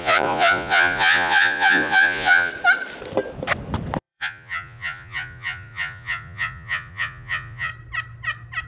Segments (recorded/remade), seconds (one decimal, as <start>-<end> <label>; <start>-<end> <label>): 0.0-2.5 remade; 2.5-4.0 recorded; 4.0-7.7 remade; 7.7-8.7 recorded